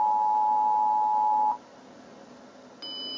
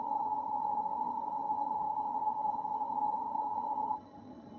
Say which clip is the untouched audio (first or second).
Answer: first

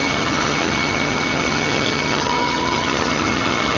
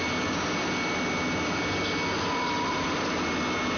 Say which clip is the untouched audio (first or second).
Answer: second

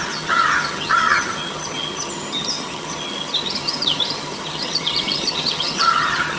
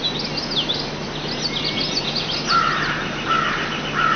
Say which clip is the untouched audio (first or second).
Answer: second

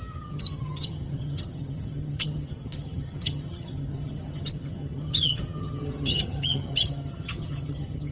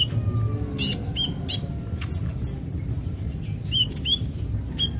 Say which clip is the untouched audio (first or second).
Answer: second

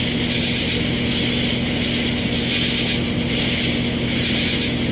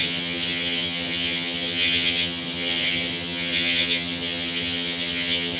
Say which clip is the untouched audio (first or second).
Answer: first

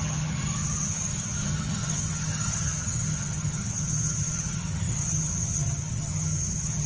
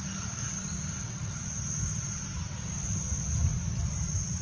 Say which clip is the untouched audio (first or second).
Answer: second